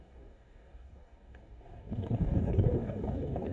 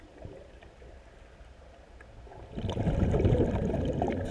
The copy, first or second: first